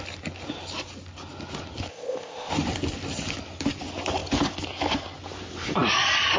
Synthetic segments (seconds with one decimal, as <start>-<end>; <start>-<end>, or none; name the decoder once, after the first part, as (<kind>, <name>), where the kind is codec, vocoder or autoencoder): 1.9-2.5 (codec, ZipCodec)